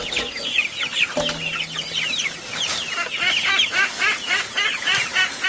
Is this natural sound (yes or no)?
yes